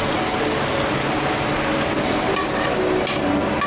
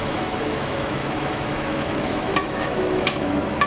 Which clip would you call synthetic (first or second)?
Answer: second